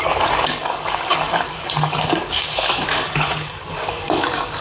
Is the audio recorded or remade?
remade